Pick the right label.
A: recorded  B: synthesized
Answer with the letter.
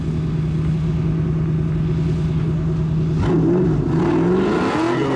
A